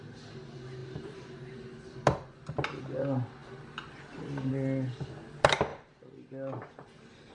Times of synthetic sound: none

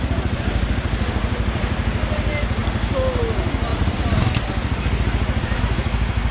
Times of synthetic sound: none

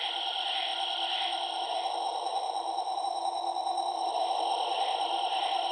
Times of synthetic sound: 0.0-0.7 (vocoder, BigVGAN v2); 3.0-5.7

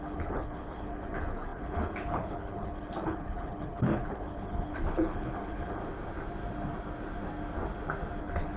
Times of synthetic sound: 0.0-5.8 (codec, HILCodec); 8.2-8.6

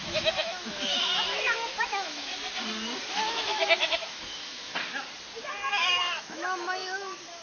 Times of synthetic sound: 0.0-2.3 (autoencoder, DAC-VAE); 3.1-4.7; 5.7-7.4

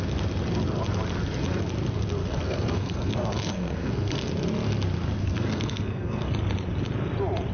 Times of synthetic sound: 2.2-4.2 (codec, SNAC); 5.2-6.3

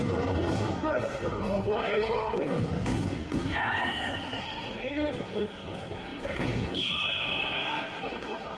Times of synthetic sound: 0.0-8.6 (codec, SNAC)

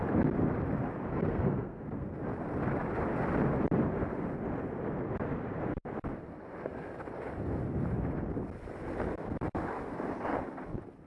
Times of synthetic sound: 1.1-2.2 (codec, SNAC)